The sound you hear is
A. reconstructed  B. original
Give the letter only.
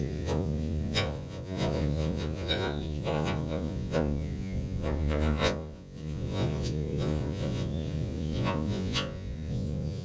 A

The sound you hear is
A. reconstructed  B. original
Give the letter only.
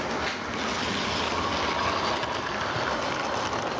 B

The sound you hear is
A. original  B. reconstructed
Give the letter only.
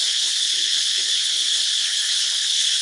B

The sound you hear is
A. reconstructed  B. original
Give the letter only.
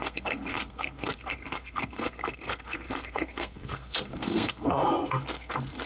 A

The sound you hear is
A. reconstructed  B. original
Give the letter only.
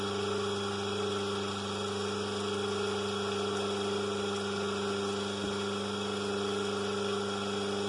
B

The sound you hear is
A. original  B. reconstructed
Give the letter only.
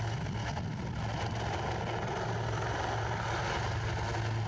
A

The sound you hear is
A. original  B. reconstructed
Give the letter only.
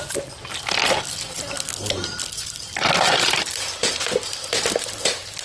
B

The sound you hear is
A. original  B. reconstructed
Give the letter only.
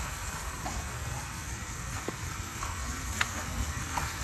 B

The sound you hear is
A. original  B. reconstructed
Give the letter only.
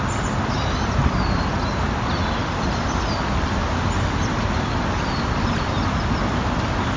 A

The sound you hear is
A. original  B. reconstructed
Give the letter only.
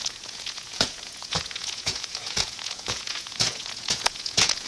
B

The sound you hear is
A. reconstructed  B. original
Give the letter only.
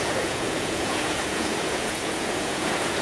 A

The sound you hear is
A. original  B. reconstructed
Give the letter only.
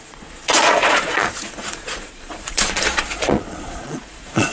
B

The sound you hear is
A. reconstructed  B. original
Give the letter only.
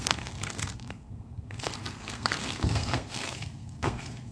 A